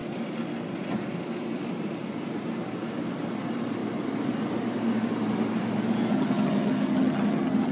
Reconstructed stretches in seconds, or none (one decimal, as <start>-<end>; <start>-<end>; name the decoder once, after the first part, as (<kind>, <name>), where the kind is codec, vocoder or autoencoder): 6.1-7.7 (vocoder, HiFi-GAN)